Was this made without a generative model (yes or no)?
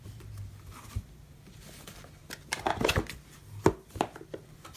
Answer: yes